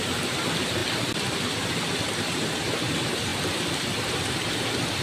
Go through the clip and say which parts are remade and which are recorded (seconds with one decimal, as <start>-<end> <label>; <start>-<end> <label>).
0.0-0.8 remade; 0.8-1.7 recorded; 1.7-3.3 remade; 3.3-4.5 recorded; 4.5-5.0 remade